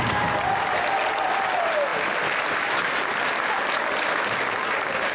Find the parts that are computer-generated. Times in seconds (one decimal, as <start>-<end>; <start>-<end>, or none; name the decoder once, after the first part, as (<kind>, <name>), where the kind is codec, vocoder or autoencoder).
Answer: none